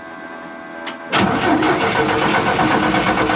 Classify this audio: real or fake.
real